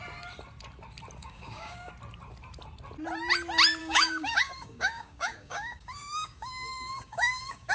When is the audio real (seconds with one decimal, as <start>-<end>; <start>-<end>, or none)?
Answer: 0.0-1.2; 1.9-3.8